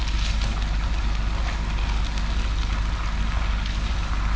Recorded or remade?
recorded